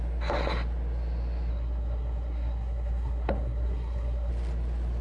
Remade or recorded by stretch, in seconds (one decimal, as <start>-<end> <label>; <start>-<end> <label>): 0.0-1.5 recorded; 1.5-4.3 remade; 4.3-5.0 recorded